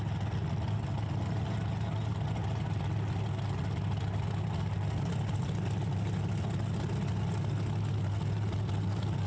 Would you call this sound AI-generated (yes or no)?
no